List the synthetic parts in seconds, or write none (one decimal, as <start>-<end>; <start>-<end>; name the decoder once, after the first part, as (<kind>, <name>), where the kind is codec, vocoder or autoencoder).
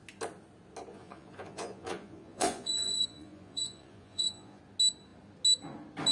0.9-4.6 (vocoder, Vocos)